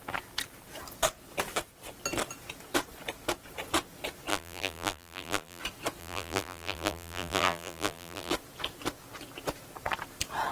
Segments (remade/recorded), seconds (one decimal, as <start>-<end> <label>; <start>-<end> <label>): 0.0-4.3 recorded; 4.3-5.6 remade; 5.6-6.0 recorded; 6.0-8.3 remade; 8.3-10.5 recorded